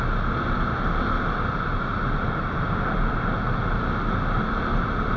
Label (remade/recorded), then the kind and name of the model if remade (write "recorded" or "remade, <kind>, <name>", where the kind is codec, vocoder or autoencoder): recorded